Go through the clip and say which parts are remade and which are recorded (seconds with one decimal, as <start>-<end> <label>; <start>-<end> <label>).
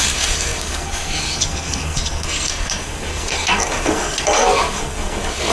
0.0-5.5 remade